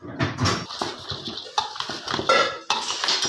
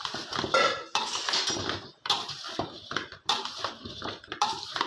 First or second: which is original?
first